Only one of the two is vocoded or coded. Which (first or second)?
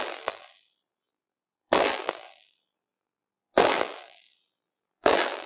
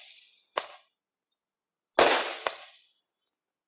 first